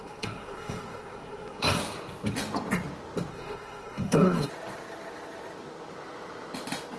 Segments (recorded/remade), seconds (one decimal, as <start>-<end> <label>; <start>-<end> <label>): 0.0-1.8 remade; 1.8-3.3 recorded; 3.3-4.5 remade; 4.5-7.0 recorded